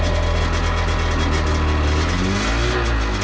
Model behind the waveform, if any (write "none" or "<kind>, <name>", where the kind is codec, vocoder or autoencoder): none